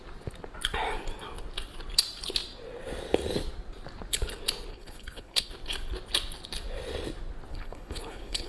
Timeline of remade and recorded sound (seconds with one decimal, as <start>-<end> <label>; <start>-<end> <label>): 0.0-4.7 recorded; 4.7-5.5 remade; 5.5-7.5 recorded; 7.5-8.5 remade